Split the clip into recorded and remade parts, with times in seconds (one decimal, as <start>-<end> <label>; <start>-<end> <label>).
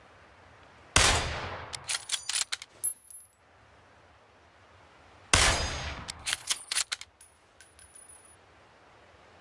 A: 0.0-6.2 recorded; 6.2-6.8 remade; 6.8-9.4 recorded